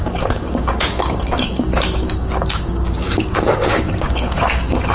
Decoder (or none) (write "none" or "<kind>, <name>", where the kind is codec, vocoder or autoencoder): codec, DAC